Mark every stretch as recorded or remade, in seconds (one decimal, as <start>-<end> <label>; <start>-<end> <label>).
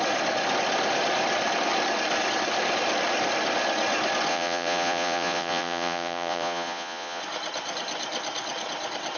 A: 0.0-4.3 recorded; 4.3-7.2 remade; 7.2-9.2 recorded